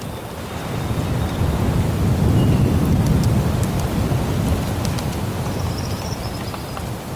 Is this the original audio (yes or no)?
yes